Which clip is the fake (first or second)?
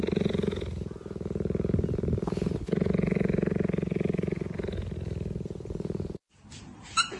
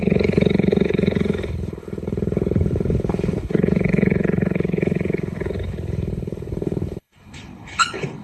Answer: second